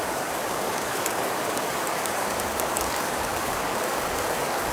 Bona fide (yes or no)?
no